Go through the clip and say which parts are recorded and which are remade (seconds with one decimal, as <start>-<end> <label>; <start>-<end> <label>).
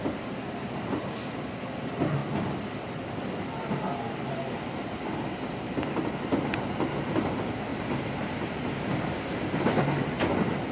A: 0.0-7.7 recorded; 7.7-9.8 remade; 9.8-10.7 recorded